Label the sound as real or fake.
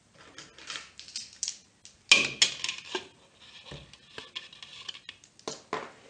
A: real